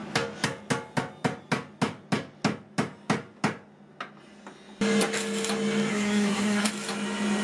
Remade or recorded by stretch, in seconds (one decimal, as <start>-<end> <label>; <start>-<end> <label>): 0.0-5.9 recorded; 5.9-6.7 remade; 6.7-7.4 recorded